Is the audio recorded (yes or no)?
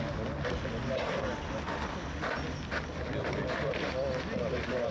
yes